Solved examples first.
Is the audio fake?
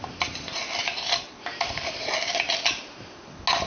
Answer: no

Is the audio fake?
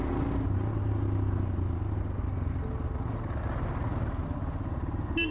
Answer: no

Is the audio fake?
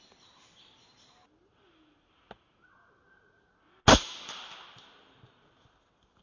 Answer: no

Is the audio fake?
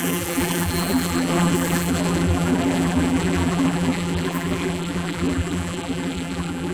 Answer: yes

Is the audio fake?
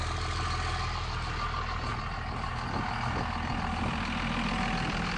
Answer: no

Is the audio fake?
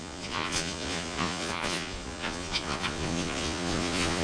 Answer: yes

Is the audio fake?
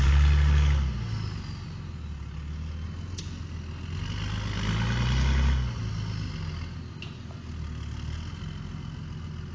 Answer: no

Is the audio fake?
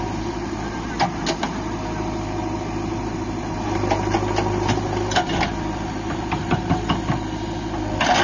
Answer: no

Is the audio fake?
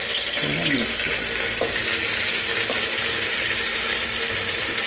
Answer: no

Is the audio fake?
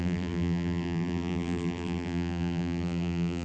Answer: yes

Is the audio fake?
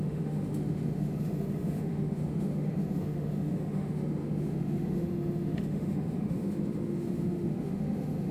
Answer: yes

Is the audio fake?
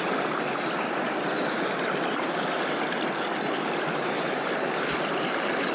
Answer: no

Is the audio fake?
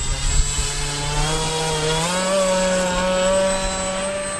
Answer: no